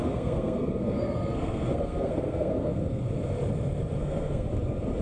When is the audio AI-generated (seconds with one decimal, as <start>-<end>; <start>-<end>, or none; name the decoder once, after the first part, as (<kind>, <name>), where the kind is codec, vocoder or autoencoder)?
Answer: 0.0-3.0 (codec, SNAC); 4.0-4.5